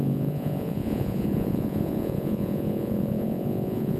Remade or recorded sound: remade